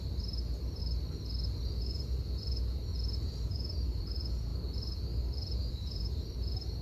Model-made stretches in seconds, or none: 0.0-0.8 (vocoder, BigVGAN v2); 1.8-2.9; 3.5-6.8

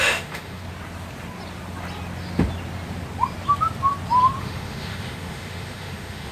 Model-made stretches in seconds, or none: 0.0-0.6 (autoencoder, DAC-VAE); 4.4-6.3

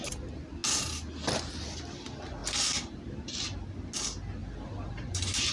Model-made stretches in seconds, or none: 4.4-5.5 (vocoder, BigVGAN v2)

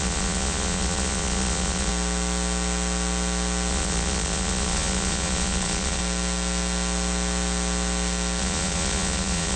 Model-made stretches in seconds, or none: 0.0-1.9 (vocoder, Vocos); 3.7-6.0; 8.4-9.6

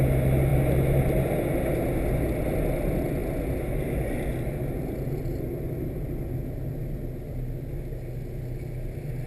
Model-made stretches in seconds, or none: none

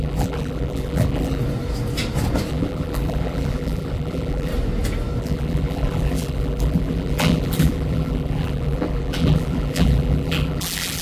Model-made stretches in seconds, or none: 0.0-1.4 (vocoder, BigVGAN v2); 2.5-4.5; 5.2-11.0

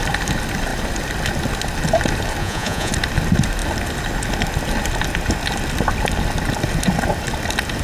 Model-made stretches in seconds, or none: 2.4-2.9 (vocoder, Vocos)

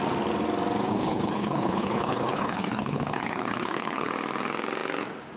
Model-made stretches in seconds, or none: 0.9-4.1 (codec, HILCodec)